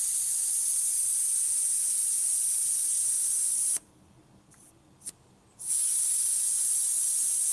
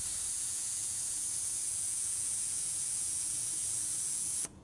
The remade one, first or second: second